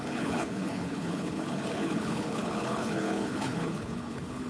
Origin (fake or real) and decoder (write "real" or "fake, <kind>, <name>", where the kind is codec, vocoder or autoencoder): fake, codec, HILCodec